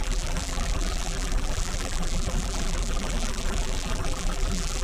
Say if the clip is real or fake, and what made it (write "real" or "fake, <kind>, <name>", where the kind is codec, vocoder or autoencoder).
fake, vocoder, BigVGAN v2